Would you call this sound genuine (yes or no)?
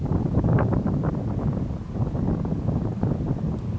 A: yes